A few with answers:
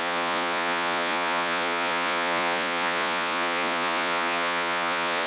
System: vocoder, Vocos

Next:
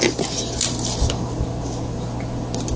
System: none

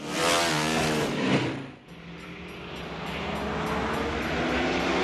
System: none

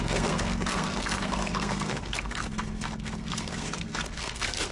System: codec, SNAC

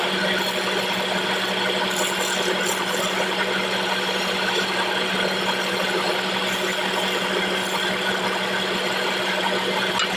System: none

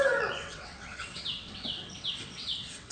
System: vocoder, WaveNeXt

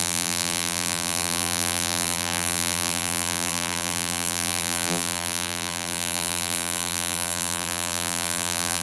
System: vocoder, BigVGAN v2